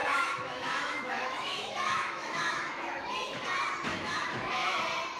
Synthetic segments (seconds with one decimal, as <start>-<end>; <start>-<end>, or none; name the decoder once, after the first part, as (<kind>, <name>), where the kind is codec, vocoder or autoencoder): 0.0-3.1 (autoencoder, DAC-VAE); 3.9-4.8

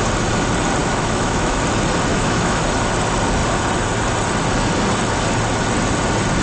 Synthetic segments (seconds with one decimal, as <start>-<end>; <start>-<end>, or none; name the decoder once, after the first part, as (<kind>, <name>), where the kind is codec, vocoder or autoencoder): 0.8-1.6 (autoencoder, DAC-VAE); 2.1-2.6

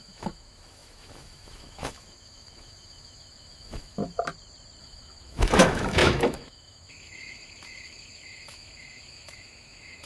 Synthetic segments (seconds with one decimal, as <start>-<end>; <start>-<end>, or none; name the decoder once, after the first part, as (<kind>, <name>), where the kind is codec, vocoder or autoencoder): 0.0-4.0 (autoencoder, DAC-VAE); 4.8-10.1

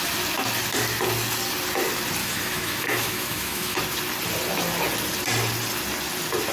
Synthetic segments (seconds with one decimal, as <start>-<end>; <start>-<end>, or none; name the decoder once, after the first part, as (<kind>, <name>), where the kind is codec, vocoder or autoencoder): 2.2-3.8 (autoencoder, DAC-VAE)